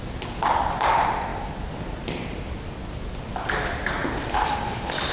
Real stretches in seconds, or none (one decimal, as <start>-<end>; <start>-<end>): 0.0-4.0